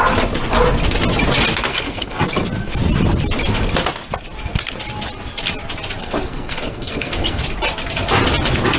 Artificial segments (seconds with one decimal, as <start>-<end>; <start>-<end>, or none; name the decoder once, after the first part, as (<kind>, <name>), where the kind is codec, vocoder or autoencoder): 1.7-2.2 (codec, SNAC); 6.0-7.4